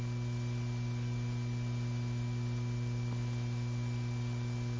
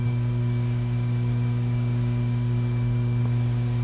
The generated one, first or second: second